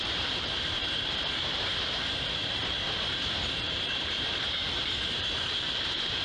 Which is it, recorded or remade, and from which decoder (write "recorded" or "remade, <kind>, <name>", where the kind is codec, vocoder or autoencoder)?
remade, vocoder, BigVGAN v2